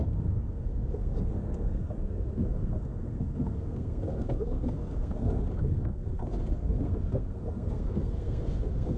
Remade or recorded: remade